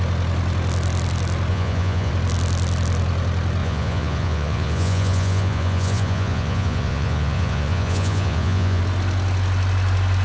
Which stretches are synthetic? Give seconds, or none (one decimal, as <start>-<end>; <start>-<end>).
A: 1.5-2.1; 3.6-8.8